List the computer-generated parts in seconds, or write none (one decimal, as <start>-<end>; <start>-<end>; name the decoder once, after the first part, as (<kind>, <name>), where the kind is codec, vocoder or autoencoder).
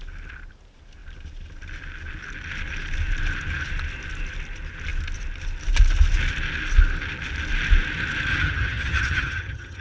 8.3-9.8 (vocoder, HiFi-GAN)